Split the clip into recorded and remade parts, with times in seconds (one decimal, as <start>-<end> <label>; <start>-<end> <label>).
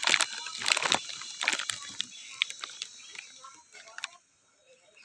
0.0-5.0 recorded